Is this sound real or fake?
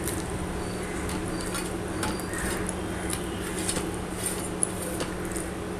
real